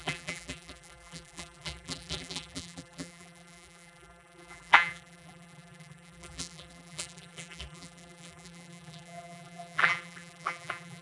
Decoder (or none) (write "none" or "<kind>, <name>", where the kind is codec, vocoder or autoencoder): vocoder, BigVGAN v2